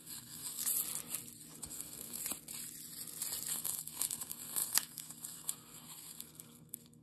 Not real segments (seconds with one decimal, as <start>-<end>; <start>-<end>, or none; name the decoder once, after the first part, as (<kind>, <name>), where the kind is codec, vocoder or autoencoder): 0.0-0.6 (codec, SNAC); 1.6-2.2; 3.5-7.0